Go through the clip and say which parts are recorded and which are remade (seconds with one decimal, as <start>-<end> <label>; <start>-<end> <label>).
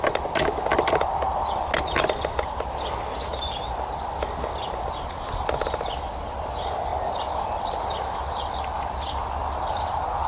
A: 0.0-10.3 recorded